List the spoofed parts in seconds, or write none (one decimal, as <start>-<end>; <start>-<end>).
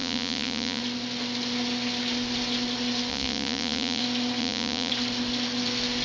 0.0-0.8; 3.1-4.0; 4.4-4.9